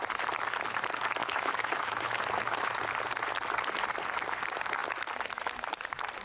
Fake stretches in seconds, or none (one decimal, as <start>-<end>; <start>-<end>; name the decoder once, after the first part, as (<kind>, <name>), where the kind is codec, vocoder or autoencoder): 1.2-2.7 (autoencoder, DAC-VAE)